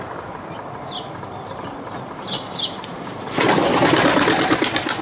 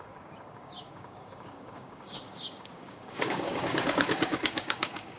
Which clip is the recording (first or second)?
first